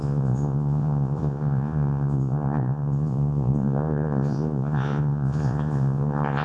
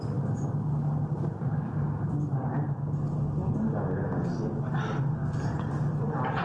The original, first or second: second